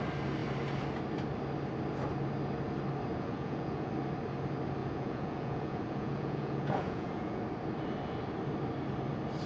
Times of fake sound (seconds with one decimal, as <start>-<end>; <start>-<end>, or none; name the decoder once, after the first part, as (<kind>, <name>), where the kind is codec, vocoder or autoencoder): 3.1-3.9 (vocoder, Vocos); 4.8-7.4